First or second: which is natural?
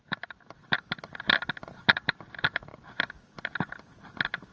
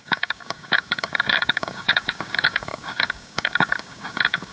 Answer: first